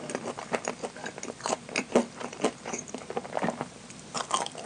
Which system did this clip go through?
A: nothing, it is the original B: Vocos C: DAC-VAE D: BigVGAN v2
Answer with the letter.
D